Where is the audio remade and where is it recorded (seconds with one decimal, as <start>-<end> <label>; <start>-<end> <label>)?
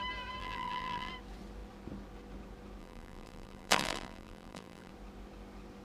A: 0.0-0.4 recorded; 0.4-1.1 remade; 1.1-2.8 recorded; 2.8-4.9 remade; 4.9-5.8 recorded